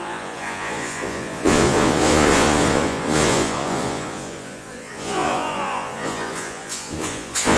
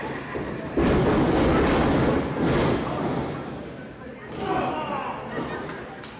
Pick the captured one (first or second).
second